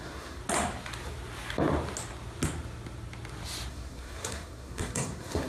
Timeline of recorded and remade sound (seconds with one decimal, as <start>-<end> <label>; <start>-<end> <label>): 0.0-0.4 remade; 0.4-3.7 recorded; 3.7-5.5 remade